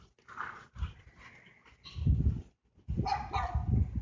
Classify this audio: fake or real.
real